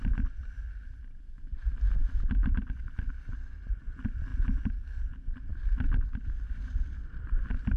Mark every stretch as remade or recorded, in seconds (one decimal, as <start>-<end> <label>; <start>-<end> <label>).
0.0-4.3 recorded; 4.3-5.0 remade; 5.0-5.5 recorded; 5.5-7.3 remade; 7.3-7.8 recorded